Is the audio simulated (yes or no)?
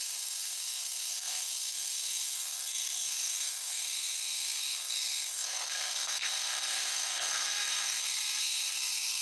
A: yes